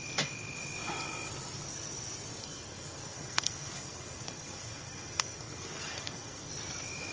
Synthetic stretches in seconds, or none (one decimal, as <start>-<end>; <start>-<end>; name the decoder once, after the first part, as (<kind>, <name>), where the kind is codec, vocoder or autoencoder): 2.4-6.5 (codec, SNAC)